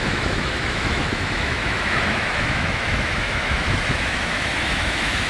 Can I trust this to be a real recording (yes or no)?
no